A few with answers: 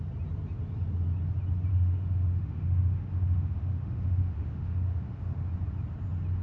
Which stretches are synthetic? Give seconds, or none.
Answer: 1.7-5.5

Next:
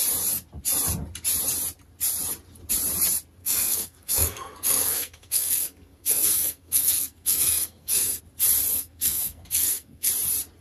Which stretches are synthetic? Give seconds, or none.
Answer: 3.4-8.2; 8.7-10.1

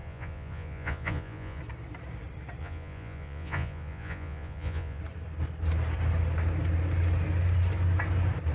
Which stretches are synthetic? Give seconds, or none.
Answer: 0.0-1.6; 2.6-5.0

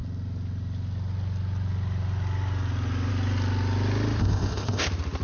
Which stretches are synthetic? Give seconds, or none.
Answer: 4.2-4.8

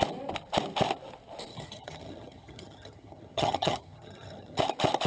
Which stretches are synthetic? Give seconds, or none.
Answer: 1.5-4.6